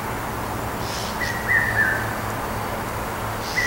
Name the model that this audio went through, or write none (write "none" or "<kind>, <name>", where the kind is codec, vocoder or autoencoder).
none